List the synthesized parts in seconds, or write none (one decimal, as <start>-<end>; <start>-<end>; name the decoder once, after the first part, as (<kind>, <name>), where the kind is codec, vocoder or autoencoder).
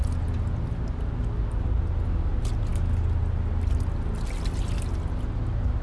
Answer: none